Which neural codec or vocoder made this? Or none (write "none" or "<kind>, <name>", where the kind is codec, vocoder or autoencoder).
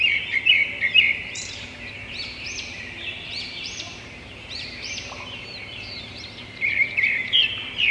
vocoder, BigVGAN v2